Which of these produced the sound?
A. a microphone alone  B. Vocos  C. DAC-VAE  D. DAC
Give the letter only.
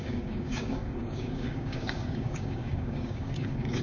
D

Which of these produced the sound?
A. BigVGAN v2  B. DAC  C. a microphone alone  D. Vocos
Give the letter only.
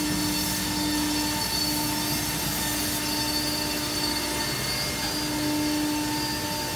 C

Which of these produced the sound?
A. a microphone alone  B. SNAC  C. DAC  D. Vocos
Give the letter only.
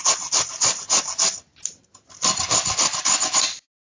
A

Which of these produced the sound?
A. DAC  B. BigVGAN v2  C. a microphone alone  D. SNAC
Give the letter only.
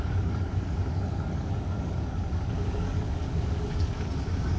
A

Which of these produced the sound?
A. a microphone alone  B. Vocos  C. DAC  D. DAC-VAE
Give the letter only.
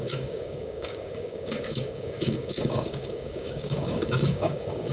C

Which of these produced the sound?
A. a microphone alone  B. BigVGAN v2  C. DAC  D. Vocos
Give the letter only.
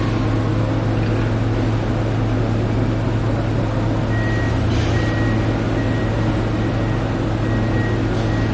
A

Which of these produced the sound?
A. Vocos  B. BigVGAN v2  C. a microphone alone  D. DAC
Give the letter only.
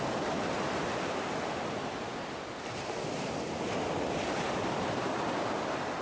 C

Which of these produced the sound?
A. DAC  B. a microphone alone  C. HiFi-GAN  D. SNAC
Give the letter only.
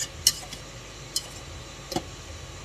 B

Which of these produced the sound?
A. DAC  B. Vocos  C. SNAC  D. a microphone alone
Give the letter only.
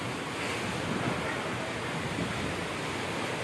D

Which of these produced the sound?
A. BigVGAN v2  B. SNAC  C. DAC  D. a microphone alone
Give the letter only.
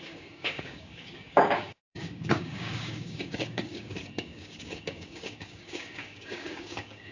C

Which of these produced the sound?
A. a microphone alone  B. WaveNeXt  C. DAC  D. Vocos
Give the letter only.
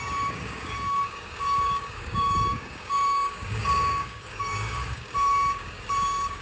C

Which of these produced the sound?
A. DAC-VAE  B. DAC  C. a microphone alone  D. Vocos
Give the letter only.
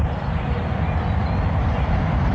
C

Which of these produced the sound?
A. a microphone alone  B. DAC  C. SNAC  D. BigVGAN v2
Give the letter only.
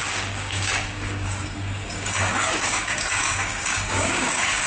B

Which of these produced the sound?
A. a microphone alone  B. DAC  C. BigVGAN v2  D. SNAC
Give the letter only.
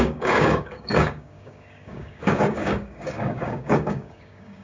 B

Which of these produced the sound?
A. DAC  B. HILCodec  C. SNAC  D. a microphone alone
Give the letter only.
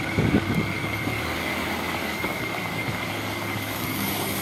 A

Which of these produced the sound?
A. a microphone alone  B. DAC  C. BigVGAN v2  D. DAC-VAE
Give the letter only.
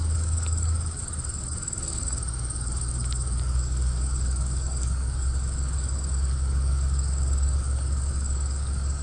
B